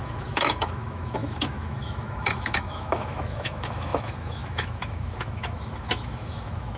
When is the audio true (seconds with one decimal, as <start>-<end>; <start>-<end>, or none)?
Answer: none